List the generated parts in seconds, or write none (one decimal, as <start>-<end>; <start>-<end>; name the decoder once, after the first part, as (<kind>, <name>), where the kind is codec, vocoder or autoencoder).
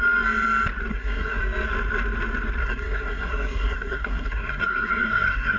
0.9-1.4 (codec, SNAC); 2.6-5.6